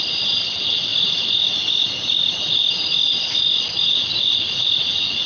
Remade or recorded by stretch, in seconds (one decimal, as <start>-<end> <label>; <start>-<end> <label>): 0.0-5.3 recorded